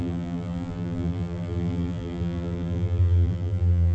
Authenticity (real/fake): fake